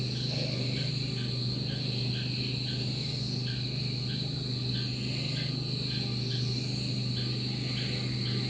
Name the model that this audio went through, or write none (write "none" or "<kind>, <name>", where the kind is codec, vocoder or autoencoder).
none